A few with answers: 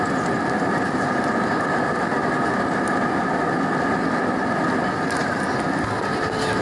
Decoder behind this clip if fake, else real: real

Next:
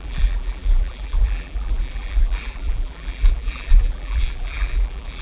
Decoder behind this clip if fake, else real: fake, vocoder, BigVGAN v2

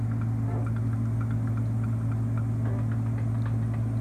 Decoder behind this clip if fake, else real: real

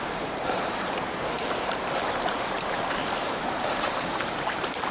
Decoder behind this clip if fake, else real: fake, vocoder, BigVGAN v2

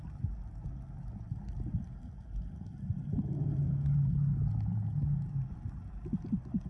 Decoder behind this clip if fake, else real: real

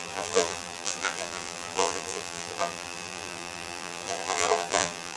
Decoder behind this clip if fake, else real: fake, vocoder, BigVGAN v2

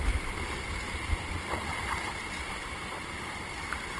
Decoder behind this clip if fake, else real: real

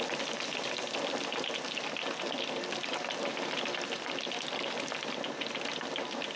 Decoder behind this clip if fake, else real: real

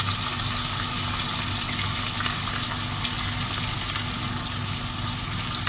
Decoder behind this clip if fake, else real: real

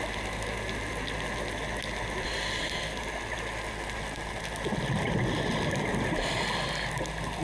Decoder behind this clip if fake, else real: real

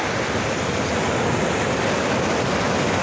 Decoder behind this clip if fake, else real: fake, vocoder, BigVGAN v2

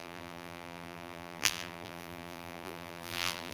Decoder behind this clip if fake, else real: fake, vocoder, BigVGAN v2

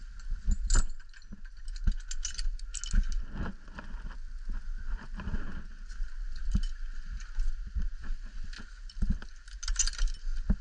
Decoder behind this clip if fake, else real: real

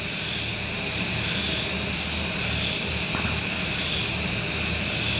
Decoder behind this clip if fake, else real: real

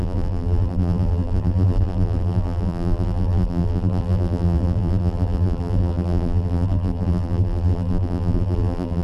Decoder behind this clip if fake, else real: fake, vocoder, BigVGAN v2